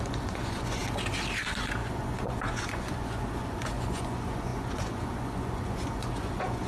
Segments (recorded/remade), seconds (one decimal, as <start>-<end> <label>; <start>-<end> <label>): 0.0-0.8 remade; 0.8-1.4 recorded; 1.4-6.7 remade